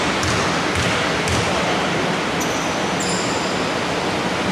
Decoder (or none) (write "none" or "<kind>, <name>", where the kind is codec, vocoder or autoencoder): none